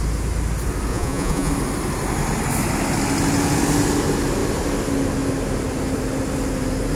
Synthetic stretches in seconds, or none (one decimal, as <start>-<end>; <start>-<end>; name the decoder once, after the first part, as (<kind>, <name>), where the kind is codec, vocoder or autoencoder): 0.9-1.5 (vocoder, Vocos)